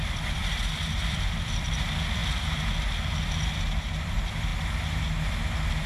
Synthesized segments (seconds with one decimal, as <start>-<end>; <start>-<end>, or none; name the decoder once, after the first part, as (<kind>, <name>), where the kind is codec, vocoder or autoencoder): 0.0-2.2 (vocoder, BigVGAN v2); 3.6-4.5; 5.5-5.9